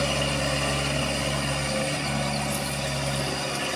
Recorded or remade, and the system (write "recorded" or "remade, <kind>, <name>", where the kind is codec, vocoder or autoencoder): recorded